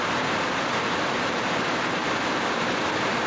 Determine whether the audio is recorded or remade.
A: recorded